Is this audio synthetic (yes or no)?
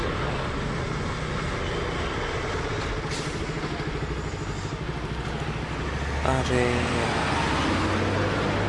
no